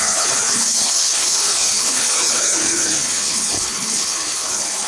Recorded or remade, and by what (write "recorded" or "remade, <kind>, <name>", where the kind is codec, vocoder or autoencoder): remade, codec, HILCodec